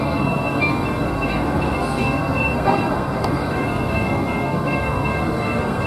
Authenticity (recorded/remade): remade